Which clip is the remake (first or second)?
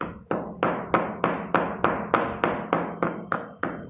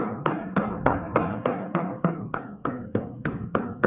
second